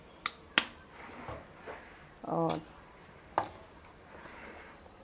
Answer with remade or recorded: recorded